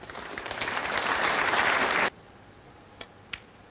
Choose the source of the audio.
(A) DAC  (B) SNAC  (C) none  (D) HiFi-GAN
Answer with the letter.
C